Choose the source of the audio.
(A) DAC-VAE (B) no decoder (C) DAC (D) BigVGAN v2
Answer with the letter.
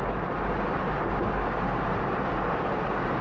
B